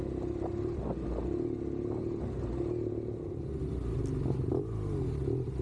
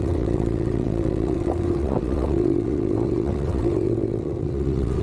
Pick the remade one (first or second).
second